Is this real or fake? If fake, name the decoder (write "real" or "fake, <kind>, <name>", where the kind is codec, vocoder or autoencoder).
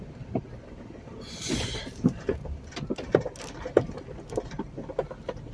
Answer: real